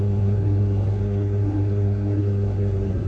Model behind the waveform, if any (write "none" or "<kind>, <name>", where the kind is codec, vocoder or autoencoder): codec, SNAC